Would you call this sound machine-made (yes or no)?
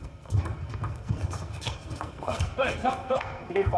yes